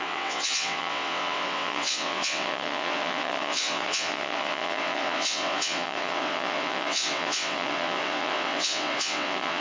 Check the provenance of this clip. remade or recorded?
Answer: remade